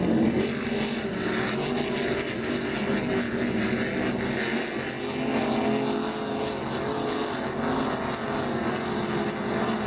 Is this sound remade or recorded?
recorded